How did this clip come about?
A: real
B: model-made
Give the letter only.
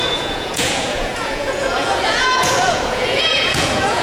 B